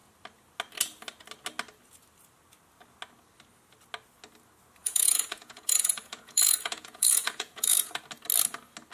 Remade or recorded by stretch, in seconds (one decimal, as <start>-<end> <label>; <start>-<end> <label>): 0.0-4.8 recorded; 4.8-8.0 remade; 8.0-8.9 recorded